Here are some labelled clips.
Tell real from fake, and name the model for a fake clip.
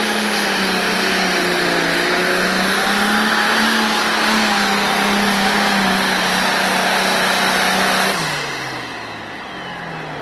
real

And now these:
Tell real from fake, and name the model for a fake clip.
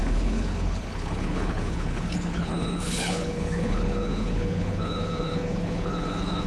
fake, codec, HILCodec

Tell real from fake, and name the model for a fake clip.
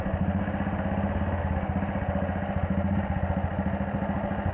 real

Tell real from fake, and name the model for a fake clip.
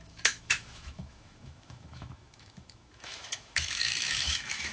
fake, autoencoder, DAC-VAE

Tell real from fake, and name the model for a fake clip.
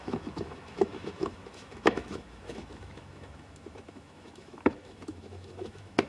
fake, autoencoder, DAC-VAE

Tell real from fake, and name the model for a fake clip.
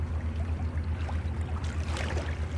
real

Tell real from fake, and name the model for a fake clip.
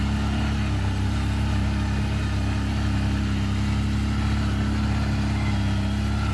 real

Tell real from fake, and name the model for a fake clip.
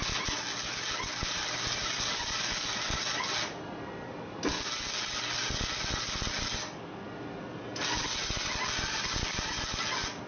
real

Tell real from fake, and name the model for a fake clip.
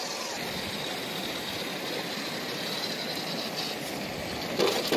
real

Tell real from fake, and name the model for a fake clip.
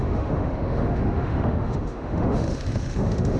fake, autoencoder, DAC-VAE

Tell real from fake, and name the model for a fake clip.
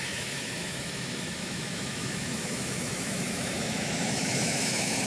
fake, autoencoder, DAC-VAE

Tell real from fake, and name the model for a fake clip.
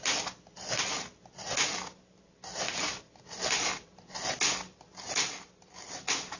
real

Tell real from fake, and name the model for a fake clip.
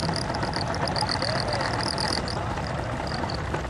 real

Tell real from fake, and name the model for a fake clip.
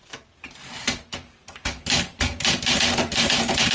fake, vocoder, BigVGAN v2